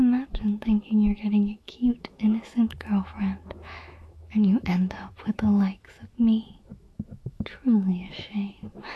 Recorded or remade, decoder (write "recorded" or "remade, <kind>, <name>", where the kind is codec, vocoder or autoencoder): remade, autoencoder, DAC-VAE